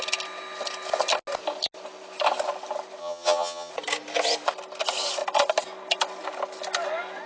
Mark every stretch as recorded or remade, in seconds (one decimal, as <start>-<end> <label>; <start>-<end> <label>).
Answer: 0.0-3.0 recorded; 3.0-3.7 remade; 3.7-7.3 recorded